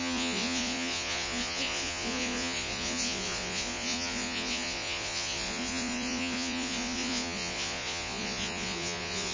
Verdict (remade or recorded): remade